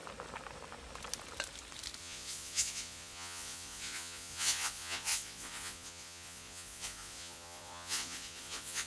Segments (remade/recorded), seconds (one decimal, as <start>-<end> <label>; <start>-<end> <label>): 0.0-2.0 recorded; 2.0-8.9 remade